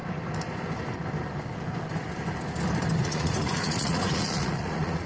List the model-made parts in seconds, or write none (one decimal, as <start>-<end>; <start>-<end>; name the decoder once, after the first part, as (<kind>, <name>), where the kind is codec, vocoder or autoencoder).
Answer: 3.0-5.1 (vocoder, Vocos)